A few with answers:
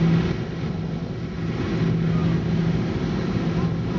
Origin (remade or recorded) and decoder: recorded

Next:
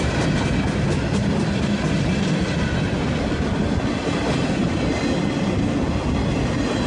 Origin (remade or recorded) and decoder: recorded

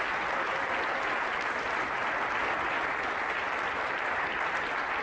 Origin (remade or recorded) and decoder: recorded